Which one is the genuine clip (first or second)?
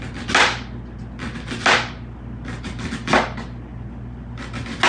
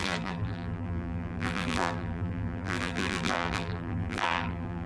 first